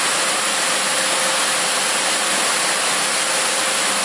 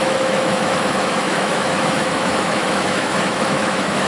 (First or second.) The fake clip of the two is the second